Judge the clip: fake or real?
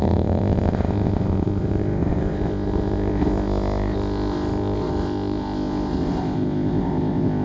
fake